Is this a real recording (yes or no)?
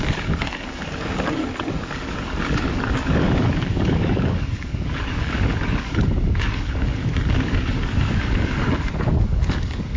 no